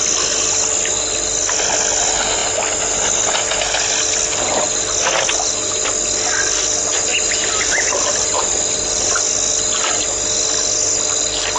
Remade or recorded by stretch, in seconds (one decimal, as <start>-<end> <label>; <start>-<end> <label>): 0.0-7.1 recorded; 7.1-8.5 remade; 8.5-11.6 recorded